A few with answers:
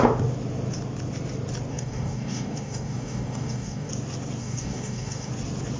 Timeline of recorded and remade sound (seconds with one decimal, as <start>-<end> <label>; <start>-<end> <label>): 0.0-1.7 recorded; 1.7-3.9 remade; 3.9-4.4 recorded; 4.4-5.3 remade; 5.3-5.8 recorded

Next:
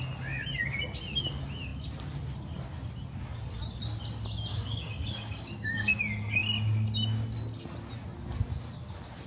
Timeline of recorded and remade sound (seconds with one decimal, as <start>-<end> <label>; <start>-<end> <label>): 0.0-4.5 recorded; 4.5-6.0 remade; 6.0-9.3 recorded

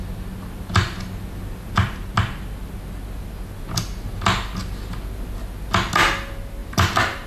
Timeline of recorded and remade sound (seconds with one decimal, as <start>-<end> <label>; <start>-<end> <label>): 0.0-7.3 recorded